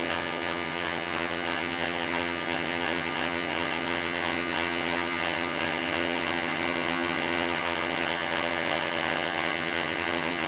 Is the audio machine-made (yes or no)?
yes